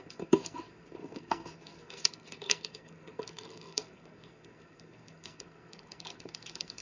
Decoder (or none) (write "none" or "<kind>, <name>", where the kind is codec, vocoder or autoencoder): codec, SNAC